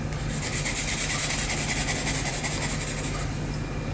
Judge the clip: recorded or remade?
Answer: recorded